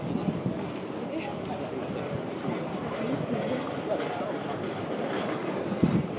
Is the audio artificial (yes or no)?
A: no